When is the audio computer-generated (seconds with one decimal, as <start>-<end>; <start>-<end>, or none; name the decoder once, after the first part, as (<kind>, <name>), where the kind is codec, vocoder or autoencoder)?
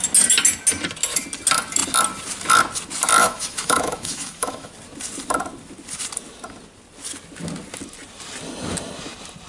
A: 3.2-4.7 (autoencoder, DAC-VAE)